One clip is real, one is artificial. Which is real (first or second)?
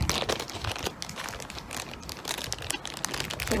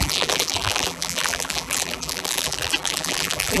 first